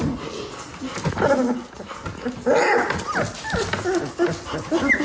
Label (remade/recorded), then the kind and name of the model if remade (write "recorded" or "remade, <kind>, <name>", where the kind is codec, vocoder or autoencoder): recorded